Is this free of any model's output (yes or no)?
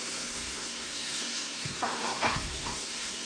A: no